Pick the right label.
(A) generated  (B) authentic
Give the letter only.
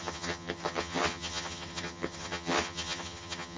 A